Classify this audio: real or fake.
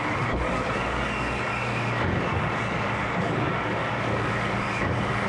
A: fake